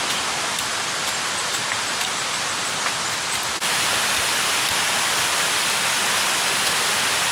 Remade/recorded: recorded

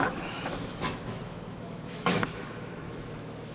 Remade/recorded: remade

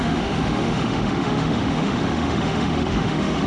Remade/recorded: remade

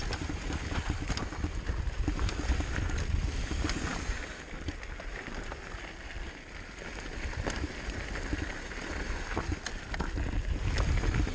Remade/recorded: recorded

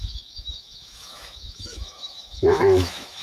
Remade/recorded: remade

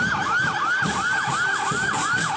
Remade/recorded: recorded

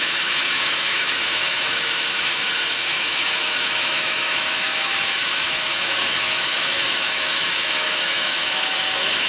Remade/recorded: remade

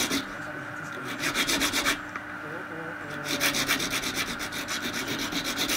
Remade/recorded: recorded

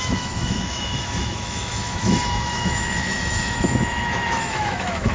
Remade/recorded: remade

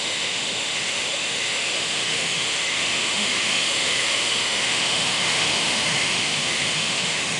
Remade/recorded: remade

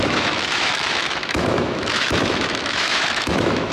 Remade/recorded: remade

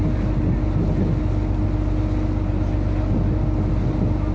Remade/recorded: recorded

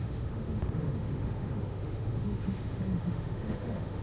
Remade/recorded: remade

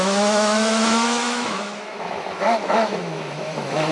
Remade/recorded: remade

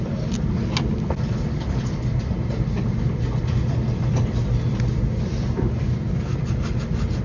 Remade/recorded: recorded